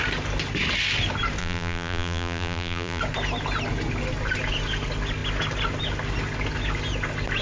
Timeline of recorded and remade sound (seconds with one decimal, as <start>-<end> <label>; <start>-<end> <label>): 0.0-1.4 recorded; 1.4-3.0 remade; 3.0-7.4 recorded